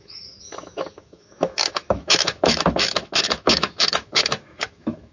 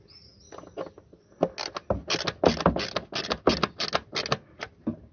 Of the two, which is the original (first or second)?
second